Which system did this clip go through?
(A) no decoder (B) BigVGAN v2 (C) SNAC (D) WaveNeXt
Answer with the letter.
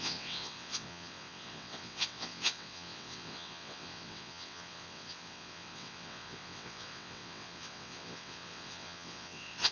D